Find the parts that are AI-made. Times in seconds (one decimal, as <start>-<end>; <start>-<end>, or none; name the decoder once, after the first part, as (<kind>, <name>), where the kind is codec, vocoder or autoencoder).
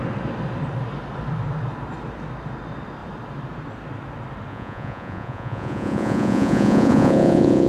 4.5-7.7 (vocoder, Vocos)